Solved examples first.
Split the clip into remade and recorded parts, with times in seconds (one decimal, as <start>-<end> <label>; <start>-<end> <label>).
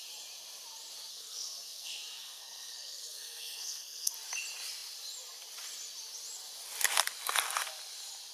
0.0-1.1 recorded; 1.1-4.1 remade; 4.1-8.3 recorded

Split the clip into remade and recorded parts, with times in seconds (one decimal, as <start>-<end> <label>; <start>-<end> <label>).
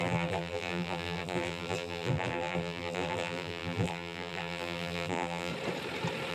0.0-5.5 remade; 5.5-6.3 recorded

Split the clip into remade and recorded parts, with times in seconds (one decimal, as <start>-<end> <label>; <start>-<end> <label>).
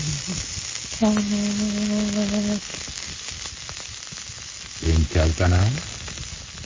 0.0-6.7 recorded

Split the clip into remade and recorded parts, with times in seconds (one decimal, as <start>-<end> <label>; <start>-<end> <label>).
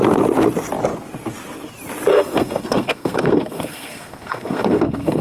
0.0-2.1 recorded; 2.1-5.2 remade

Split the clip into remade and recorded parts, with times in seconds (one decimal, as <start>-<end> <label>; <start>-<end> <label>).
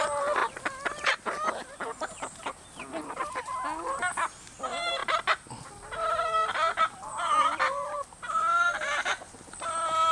0.0-10.1 recorded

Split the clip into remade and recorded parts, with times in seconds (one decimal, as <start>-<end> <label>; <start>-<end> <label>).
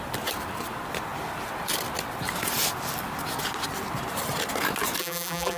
0.0-5.0 recorded; 5.0-5.6 remade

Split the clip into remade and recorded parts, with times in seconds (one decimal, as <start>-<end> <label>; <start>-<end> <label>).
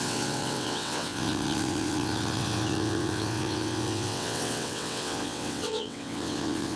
0.0-6.8 remade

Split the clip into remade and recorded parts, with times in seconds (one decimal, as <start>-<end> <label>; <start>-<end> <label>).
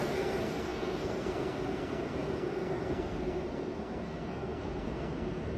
0.0-5.6 remade